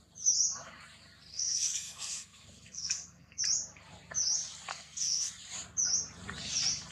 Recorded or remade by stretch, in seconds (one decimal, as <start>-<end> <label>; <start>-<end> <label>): 0.0-1.3 recorded; 1.3-3.4 remade; 3.4-4.7 recorded; 4.7-5.3 remade; 5.3-6.9 recorded